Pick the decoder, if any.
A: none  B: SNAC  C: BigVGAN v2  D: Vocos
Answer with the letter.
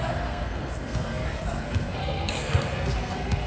B